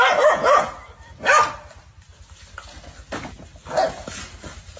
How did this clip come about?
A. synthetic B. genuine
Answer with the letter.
B